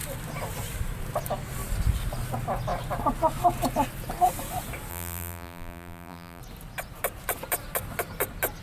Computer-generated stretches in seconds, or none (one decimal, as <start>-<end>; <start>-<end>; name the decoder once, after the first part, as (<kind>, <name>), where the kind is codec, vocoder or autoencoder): 4.9-6.4 (vocoder, BigVGAN v2)